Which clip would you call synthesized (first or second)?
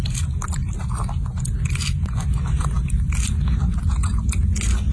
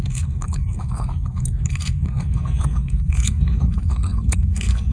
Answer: second